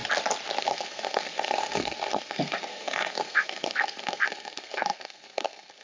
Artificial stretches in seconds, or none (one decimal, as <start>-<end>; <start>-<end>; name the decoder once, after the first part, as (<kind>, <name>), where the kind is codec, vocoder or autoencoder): 0.6-5.8 (codec, SNAC)